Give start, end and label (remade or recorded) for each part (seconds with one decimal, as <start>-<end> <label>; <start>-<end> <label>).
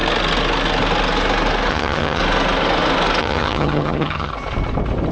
0.0-1.7 recorded; 1.7-2.2 remade; 2.2-3.2 recorded; 3.2-4.3 remade; 4.3-5.1 recorded